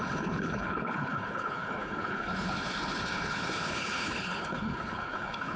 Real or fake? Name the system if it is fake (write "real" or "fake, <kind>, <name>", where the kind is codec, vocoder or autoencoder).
fake, codec, HILCodec